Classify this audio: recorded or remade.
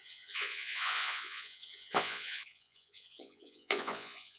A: remade